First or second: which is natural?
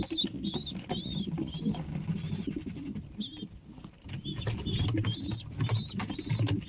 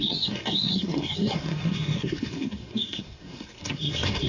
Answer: first